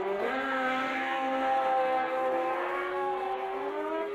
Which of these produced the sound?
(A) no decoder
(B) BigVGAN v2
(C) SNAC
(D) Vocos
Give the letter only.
C